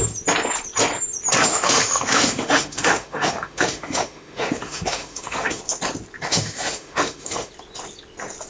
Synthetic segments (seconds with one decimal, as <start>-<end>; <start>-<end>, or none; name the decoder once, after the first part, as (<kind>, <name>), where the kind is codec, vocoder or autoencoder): 1.5-5.6 (autoencoder, DAC-VAE); 6.3-7.5